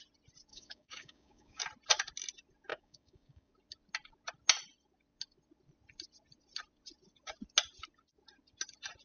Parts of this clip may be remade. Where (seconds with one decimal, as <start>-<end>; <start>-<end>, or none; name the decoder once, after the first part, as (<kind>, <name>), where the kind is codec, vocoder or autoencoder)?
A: 0.5-1.6 (codec, DAC); 2.7-3.5